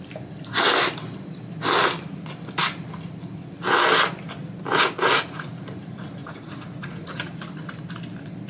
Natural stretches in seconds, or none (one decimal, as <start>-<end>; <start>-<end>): 0.0-5.0; 5.5-6.2; 7.5-8.5